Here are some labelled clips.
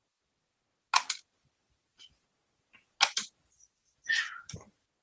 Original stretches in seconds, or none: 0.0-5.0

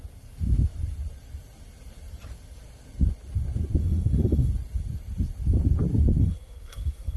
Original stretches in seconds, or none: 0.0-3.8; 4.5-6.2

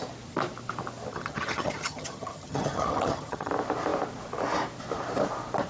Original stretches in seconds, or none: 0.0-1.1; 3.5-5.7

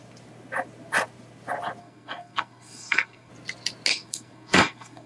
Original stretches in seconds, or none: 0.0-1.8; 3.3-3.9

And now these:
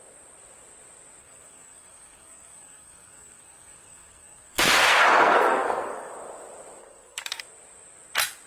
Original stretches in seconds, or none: 0.0-1.2; 6.1-6.8; 7.4-8.5

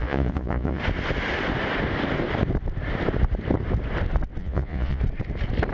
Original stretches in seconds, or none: 0.8-4.4; 5.0-5.7